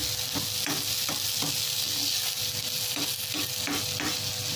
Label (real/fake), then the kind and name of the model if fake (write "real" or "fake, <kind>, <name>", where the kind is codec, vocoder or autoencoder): real